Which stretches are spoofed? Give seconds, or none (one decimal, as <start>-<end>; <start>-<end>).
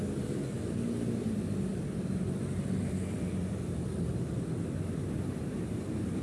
none